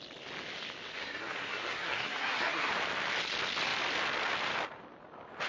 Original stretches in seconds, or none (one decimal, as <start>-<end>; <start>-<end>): 0.0-1.0; 2.7-5.5